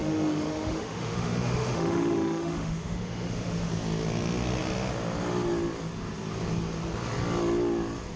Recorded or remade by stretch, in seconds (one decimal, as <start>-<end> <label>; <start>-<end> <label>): 0.0-3.7 remade; 3.7-8.2 recorded